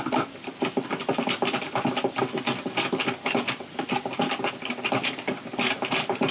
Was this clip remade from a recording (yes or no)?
no